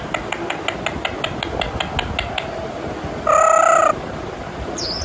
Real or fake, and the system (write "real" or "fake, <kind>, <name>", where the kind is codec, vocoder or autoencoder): real